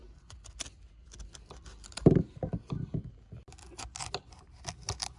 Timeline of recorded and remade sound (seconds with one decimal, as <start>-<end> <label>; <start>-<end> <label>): 0.0-5.2 recorded